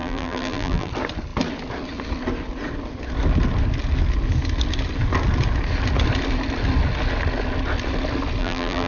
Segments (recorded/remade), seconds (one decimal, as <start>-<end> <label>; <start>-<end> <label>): 0.0-0.9 remade; 0.9-8.4 recorded; 8.4-8.9 remade